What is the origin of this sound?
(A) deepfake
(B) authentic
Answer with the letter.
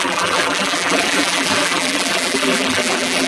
A